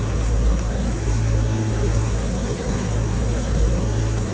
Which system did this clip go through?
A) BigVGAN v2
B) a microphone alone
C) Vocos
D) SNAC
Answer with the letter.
D